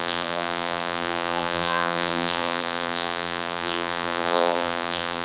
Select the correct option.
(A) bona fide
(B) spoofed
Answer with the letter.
B